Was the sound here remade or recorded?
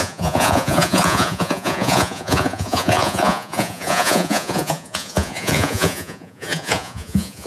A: remade